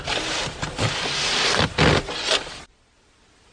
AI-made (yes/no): no